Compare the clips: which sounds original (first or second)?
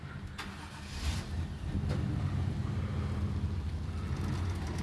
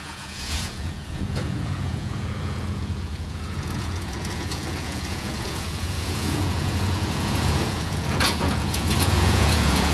first